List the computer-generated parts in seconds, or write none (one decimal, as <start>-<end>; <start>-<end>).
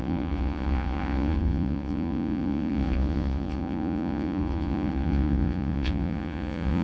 0.0-6.8